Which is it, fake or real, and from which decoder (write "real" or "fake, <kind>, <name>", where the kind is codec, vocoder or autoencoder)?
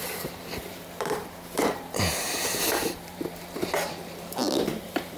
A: fake, vocoder, BigVGAN v2